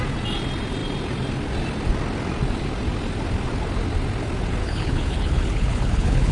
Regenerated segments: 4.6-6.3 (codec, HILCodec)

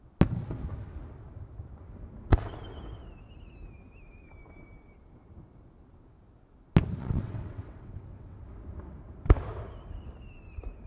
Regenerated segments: 7.0-8.4 (vocoder, WaveNeXt)

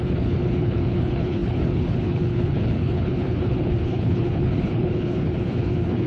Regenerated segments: 0.0-6.1 (codec, HILCodec)

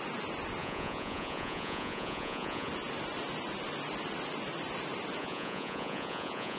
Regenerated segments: 0.6-2.7 (vocoder, Vocos); 5.2-6.6

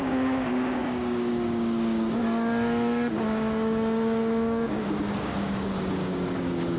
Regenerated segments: 0.0-6.8 (codec, DAC)

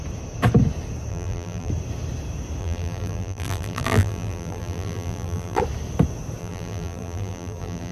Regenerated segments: 1.1-1.7 (vocoder, BigVGAN v2); 2.6-5.6; 6.4-7.9

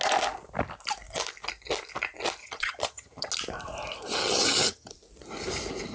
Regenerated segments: 2.4-3.3 (vocoder, HiFi-GAN); 4.2-4.9

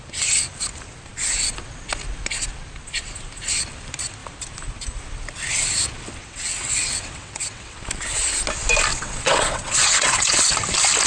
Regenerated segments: 6.2-7.8 (vocoder, WaveNeXt); 8.9-10.5